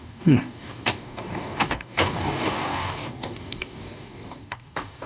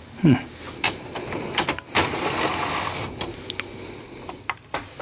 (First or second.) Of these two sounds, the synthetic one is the first